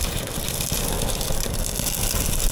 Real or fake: fake